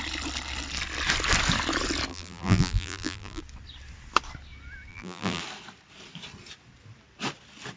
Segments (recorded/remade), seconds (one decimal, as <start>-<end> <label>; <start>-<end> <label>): 0.0-2.1 recorded; 2.1-3.4 remade; 3.4-4.9 recorded; 4.9-5.4 remade; 5.4-7.8 recorded